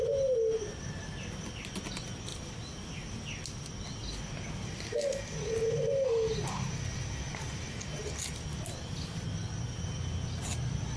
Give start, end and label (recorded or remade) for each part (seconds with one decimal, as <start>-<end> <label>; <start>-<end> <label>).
0.0-11.0 recorded